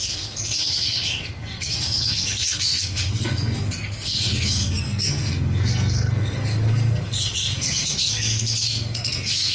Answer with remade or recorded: remade